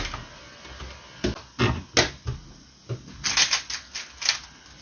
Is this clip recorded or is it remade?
recorded